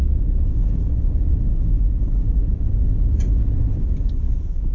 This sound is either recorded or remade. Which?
recorded